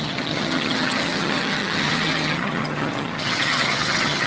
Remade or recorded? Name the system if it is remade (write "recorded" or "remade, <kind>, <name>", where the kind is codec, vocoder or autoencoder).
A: remade, vocoder, HiFi-GAN